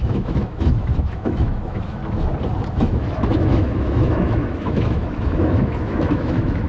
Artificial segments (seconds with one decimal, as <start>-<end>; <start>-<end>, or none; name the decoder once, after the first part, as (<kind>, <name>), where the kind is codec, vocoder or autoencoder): 0.0-2.0 (autoencoder, DAC-VAE); 2.7-6.7